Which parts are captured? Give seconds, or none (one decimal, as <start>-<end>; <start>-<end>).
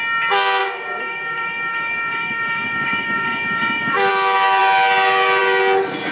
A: 0.0-0.6; 4.1-6.1